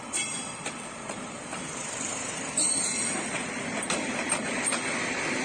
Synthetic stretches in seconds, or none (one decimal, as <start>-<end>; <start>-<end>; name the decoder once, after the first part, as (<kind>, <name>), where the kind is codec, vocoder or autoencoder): 3.4-4.6 (vocoder, BigVGAN v2)